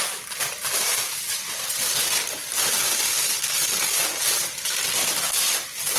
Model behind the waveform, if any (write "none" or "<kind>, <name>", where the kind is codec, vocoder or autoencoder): none